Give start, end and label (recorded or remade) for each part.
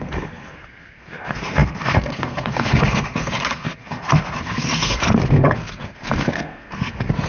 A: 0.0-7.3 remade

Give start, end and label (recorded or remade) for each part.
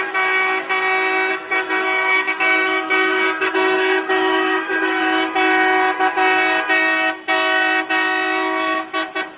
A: 0.0-1.3 recorded; 1.3-5.0 remade; 5.0-9.4 recorded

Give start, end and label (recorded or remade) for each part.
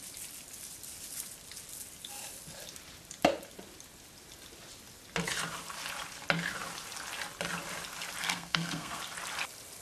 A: 0.0-8.2 recorded; 8.2-9.0 remade; 9.0-9.8 recorded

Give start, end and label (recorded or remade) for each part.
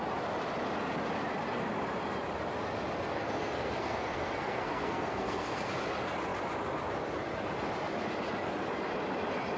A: 0.0-3.1 recorded; 3.1-5.7 remade; 5.7-9.6 recorded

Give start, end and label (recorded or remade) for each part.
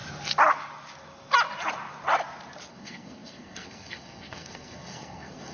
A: 0.0-2.7 recorded; 2.7-5.5 remade